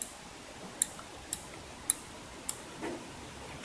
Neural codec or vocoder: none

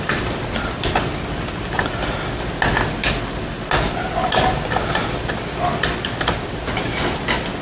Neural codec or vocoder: vocoder, BigVGAN v2